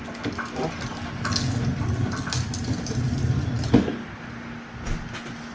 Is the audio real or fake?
real